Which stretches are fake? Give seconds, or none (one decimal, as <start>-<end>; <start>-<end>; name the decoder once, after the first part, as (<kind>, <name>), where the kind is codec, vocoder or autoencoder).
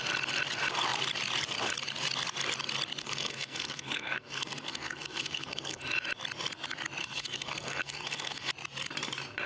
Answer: 3.0-5.8 (codec, SNAC); 7.0-8.5